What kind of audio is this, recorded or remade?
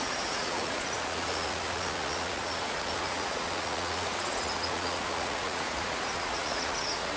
remade